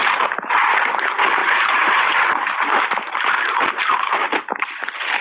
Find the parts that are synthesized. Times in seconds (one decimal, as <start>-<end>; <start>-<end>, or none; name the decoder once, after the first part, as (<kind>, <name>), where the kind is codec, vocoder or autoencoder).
0.0-0.7 (vocoder, BigVGAN v2); 1.4-4.5